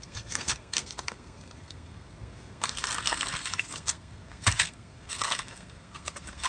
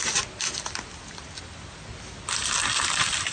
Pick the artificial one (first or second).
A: first